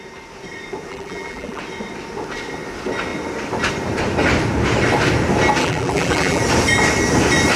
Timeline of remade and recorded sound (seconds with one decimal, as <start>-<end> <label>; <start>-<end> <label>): 0.0-0.9 recorded; 0.9-1.6 remade; 1.6-5.6 recorded; 5.6-6.4 remade; 6.4-7.6 recorded